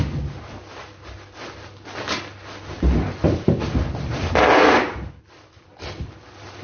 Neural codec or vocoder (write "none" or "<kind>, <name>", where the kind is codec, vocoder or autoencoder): none